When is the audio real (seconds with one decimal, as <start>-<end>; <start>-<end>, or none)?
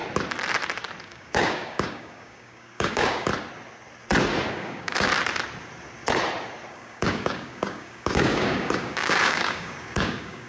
0.0-1.0; 3.3-4.5; 5.1-6.7